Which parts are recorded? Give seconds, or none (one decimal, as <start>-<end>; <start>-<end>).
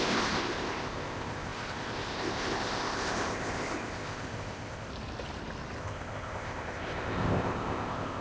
4.9-5.8